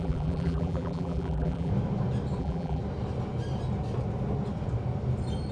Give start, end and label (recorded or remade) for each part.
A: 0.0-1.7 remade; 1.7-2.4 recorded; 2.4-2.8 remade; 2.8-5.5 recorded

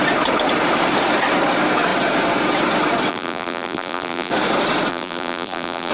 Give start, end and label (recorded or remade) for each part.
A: 0.0-3.1 recorded; 3.1-4.3 remade; 4.3-4.9 recorded; 4.9-5.9 remade

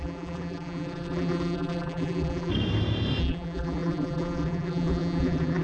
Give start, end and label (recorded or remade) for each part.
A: 0.0-2.5 remade; 2.5-3.2 recorded; 3.2-5.6 remade

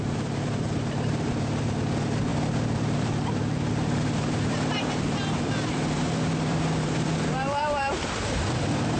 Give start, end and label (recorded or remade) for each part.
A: 0.0-9.0 remade

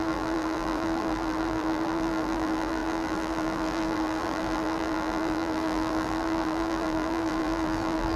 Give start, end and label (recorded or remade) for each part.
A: 0.0-8.2 remade

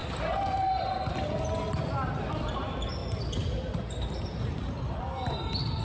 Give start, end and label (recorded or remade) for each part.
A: 0.0-3.0 recorded; 3.0-5.0 remade; 5.0-5.8 recorded